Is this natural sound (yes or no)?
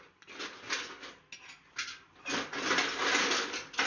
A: yes